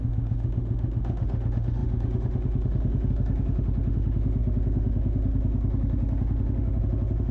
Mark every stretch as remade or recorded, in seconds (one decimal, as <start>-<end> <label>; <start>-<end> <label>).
0.0-7.3 remade